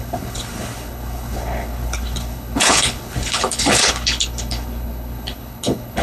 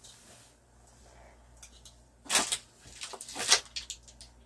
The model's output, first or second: first